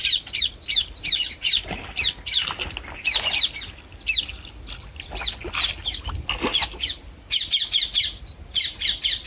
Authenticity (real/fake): real